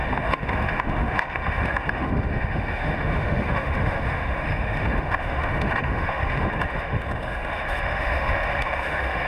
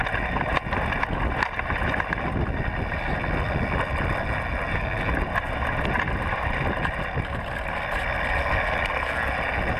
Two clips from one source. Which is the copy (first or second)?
first